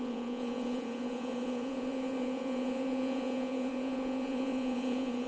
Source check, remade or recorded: remade